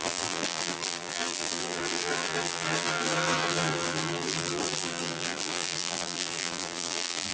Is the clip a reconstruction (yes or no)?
yes